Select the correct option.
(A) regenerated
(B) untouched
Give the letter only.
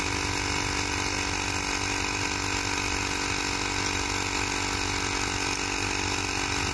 B